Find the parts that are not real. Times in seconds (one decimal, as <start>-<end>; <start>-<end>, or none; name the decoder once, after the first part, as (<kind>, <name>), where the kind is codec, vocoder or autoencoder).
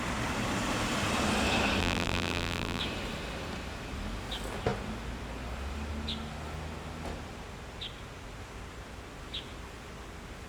1.8-2.8 (vocoder, BigVGAN v2)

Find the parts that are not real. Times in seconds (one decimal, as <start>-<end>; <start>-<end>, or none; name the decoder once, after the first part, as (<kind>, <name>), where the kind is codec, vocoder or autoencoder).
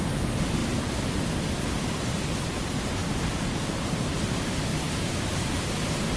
0.6-1.5 (vocoder, BigVGAN v2); 3.0-4.2; 4.7-5.7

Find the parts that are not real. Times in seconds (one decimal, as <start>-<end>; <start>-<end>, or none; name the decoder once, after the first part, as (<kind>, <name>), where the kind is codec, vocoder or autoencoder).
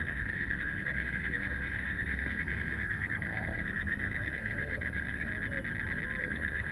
0.0-5.3 (codec, SNAC); 6.2-6.7